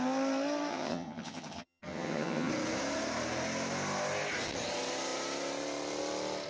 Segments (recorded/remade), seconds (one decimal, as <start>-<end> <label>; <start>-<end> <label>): 0.0-0.7 recorded; 0.7-2.5 remade; 2.5-6.5 recorded